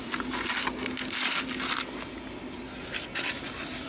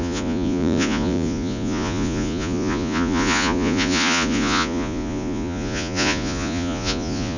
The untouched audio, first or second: first